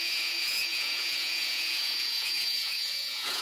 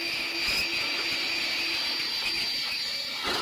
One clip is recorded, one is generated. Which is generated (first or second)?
first